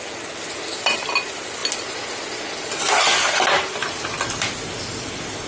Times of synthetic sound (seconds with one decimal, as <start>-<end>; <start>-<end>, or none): none